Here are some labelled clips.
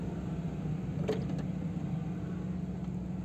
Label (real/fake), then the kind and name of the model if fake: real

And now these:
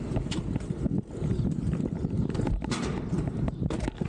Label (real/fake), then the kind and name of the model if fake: real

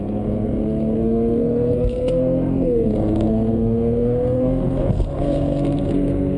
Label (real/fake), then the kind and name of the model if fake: fake, codec, SNAC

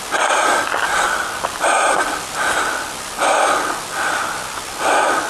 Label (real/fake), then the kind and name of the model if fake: real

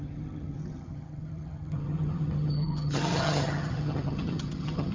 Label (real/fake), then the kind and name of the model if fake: fake, vocoder, HiFi-GAN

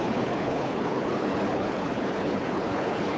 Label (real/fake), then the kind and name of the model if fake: fake, codec, HILCodec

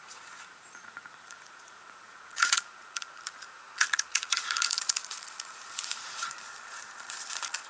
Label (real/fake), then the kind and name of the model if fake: fake, vocoder, Vocos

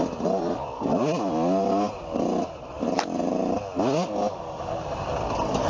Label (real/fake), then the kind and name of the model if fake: real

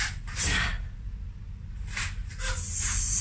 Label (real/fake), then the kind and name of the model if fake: real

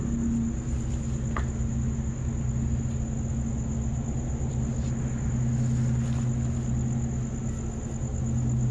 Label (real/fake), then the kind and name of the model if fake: real